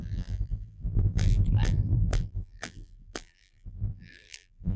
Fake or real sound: fake